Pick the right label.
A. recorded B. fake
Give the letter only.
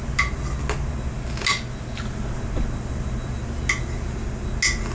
A